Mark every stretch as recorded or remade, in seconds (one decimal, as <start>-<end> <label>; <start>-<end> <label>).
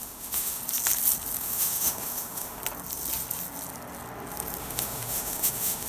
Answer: 0.0-0.6 remade; 0.6-1.4 recorded; 1.4-2.6 remade; 2.6-4.6 recorded; 4.6-5.9 remade